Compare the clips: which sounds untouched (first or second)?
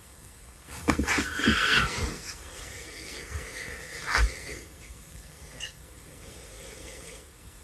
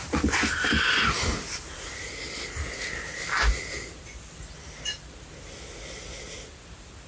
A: second